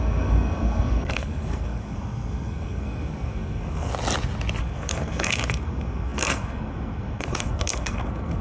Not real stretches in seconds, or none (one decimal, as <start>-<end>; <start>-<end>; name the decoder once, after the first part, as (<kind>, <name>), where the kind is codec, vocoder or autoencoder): 0.0-3.9 (codec, SNAC); 4.6-8.4